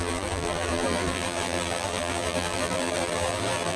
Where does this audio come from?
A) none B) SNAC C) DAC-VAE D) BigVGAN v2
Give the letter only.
D